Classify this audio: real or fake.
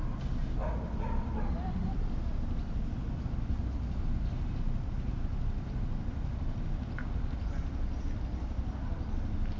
real